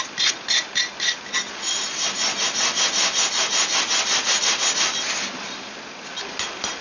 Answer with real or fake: real